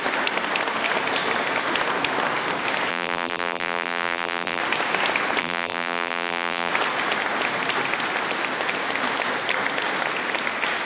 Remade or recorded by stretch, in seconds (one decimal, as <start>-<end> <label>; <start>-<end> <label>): 0.0-2.9 recorded; 2.9-4.6 remade; 4.6-5.4 recorded; 5.4-6.7 remade; 6.7-10.9 recorded

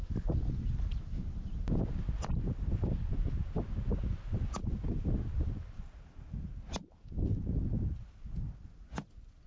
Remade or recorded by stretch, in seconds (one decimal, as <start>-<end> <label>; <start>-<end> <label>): 0.0-9.5 recorded